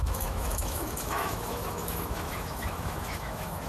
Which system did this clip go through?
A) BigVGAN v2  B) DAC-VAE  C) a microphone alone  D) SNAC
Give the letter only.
B